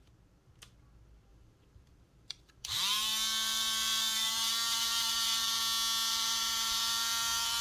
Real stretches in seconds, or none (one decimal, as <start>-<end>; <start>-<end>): 0.0-1.3; 5.6-6.1